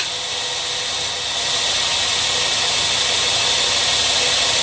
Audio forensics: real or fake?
real